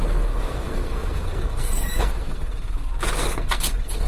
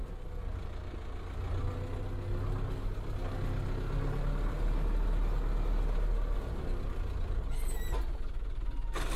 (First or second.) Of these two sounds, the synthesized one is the first